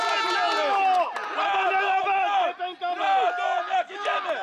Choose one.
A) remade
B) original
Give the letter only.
B